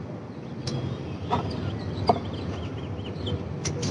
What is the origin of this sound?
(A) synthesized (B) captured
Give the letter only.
B